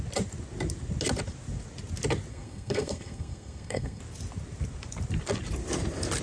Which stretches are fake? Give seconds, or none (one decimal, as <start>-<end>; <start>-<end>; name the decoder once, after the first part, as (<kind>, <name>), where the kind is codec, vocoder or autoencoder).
2.3-4.0 (codec, SNAC)

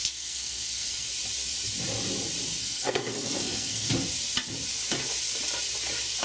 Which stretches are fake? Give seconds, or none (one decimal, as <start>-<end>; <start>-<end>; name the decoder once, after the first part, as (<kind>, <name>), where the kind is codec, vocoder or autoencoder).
0.0-1.1 (codec, SNAC); 2.6-3.9

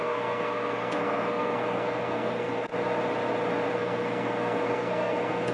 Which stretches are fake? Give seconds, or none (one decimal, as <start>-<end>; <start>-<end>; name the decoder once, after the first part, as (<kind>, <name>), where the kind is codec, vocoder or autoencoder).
0.0-2.7 (codec, SNAC); 3.7-5.5

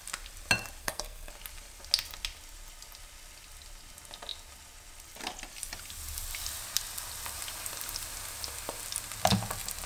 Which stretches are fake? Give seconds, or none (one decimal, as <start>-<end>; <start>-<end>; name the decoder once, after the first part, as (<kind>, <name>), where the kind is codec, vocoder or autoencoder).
0.8-1.3 (codec, SNAC)

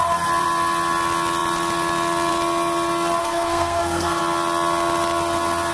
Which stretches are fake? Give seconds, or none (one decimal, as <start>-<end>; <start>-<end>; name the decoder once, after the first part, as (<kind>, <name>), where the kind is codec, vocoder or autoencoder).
3.2-4.2 (codec, SNAC)

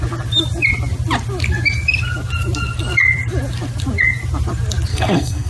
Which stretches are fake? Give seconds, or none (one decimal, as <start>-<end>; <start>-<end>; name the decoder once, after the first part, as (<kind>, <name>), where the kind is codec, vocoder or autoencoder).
4.9-5.5 (codec, SNAC)

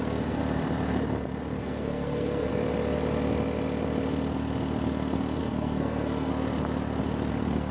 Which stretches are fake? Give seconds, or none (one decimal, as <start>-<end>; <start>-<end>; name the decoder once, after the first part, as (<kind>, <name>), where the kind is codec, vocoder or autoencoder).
0.0-0.4 (codec, SNAC); 1.6-2.5; 5.4-6.3; 7.3-7.7

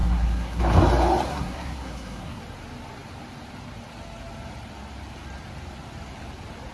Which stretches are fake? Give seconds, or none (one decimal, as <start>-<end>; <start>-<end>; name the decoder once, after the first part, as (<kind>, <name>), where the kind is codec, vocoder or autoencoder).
0.0-0.6 (codec, SNAC); 1.3-2.4